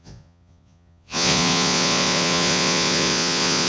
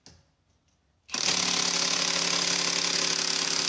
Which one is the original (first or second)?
second